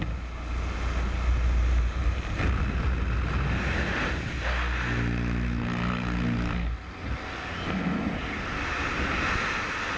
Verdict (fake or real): real